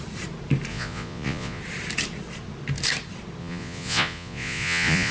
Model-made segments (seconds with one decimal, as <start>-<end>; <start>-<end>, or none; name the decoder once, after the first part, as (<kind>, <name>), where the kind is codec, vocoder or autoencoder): 0.7-1.6 (vocoder, Vocos); 3.4-5.1